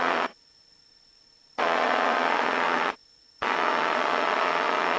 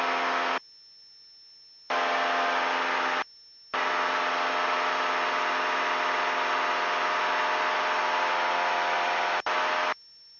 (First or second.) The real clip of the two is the second